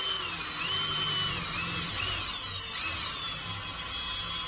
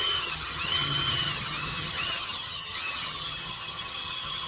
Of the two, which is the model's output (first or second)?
second